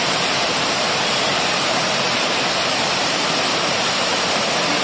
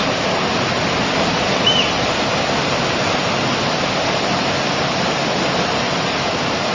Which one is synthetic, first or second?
first